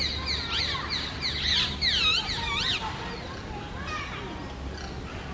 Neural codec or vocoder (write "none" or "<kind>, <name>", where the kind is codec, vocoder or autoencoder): none